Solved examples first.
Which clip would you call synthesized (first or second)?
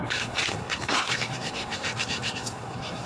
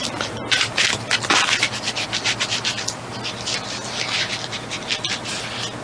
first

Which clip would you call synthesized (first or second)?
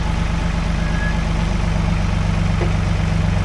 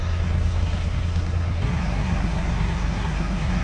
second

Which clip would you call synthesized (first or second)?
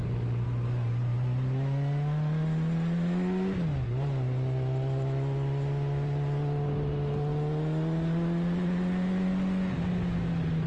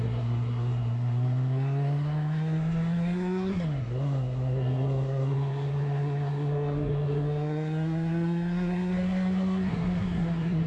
second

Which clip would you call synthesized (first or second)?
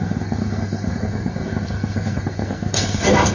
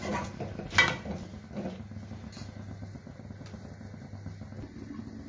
first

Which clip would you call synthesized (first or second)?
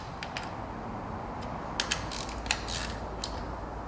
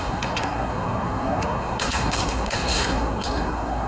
second